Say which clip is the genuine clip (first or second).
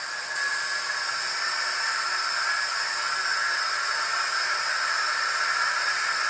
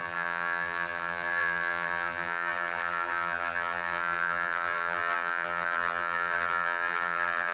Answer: first